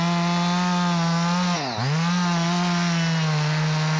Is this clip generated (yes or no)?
no